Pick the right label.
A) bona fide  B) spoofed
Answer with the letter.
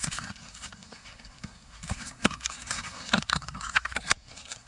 B